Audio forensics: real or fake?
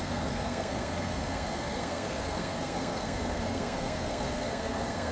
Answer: fake